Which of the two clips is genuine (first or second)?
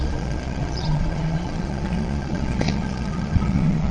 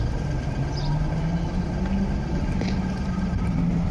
second